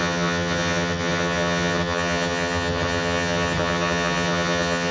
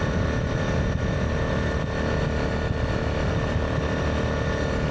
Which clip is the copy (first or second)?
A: first